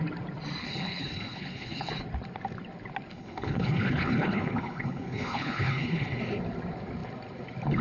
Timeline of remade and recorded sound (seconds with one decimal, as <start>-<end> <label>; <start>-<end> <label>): 0.0-0.6 recorded; 0.6-1.9 remade; 1.9-3.1 recorded; 3.1-6.2 remade; 6.2-7.8 recorded